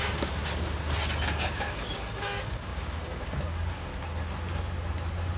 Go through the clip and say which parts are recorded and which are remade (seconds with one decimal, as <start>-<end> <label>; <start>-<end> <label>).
0.0-0.4 remade; 0.4-1.7 recorded; 1.7-3.9 remade; 3.9-5.4 recorded